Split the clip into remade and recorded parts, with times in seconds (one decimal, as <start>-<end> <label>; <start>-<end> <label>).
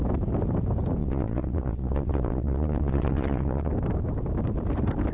0.0-1.0 recorded; 1.0-3.7 remade; 3.7-5.1 recorded